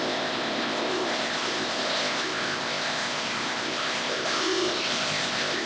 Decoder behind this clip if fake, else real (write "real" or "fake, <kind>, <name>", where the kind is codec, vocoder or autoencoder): fake, codec, ZipCodec